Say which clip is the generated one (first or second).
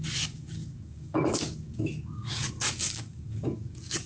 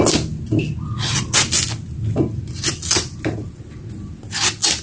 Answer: first